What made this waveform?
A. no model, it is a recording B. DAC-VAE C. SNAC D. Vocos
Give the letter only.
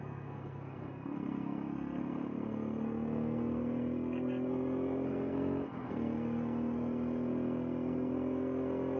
C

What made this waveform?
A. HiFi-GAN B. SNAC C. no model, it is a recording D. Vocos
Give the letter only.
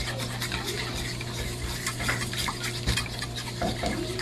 C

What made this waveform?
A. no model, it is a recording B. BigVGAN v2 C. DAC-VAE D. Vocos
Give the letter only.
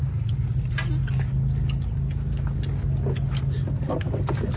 A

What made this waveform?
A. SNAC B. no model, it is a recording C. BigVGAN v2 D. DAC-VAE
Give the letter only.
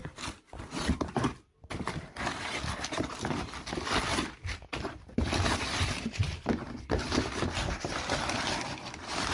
B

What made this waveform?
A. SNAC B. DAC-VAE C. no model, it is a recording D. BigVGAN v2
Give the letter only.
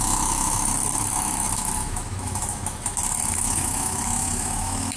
B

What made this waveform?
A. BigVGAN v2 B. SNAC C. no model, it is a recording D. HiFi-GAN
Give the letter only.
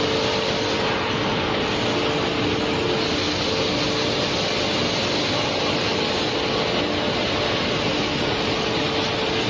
C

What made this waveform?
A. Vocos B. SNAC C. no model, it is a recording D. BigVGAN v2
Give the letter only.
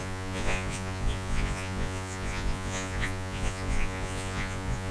A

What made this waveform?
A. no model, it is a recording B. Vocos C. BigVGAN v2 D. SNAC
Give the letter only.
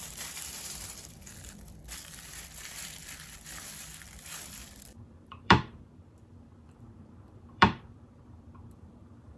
C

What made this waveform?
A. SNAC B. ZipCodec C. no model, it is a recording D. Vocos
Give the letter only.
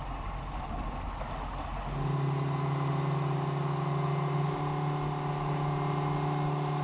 C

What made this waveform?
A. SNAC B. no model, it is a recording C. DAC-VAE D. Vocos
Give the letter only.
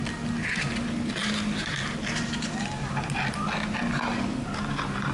B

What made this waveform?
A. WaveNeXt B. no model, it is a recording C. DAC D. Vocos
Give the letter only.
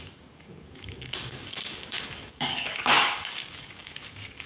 C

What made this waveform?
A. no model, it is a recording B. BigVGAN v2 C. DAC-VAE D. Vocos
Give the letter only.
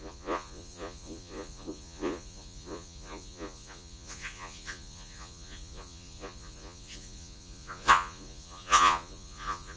D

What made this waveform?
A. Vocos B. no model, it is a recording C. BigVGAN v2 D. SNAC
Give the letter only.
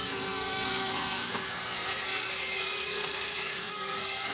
D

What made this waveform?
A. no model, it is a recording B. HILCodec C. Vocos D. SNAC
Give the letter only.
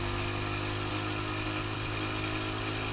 A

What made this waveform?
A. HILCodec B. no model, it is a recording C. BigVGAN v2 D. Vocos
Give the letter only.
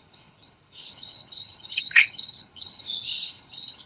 A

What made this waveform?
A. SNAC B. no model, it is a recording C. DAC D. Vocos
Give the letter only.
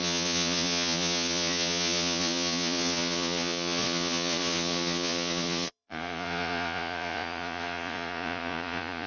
D